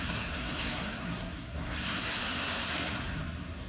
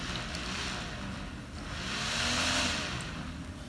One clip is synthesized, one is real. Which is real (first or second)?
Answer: second